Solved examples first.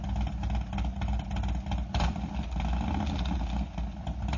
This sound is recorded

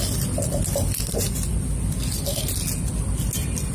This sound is recorded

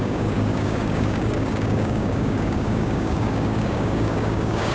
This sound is remade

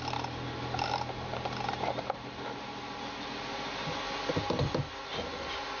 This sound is recorded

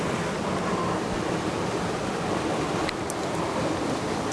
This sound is recorded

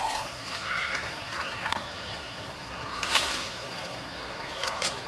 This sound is remade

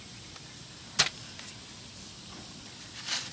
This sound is recorded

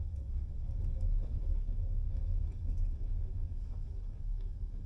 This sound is remade